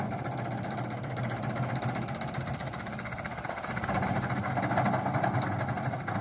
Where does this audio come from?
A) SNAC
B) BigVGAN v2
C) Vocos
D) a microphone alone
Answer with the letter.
D